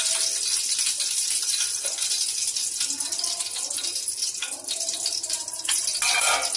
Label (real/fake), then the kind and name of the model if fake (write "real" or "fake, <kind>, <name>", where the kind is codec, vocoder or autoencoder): real